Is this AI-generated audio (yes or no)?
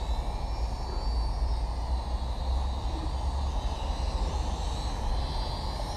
no